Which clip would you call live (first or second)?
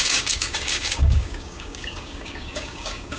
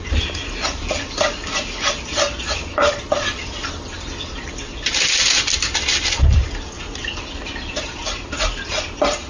second